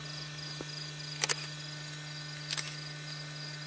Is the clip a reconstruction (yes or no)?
no